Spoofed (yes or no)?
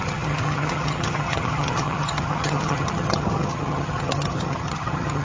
yes